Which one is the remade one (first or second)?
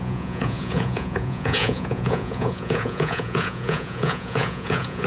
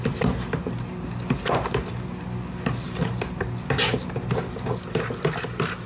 first